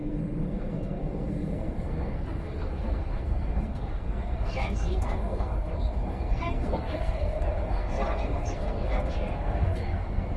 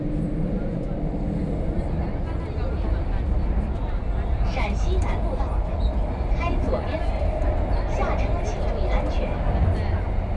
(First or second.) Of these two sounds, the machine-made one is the first